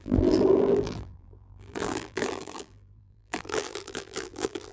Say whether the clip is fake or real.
fake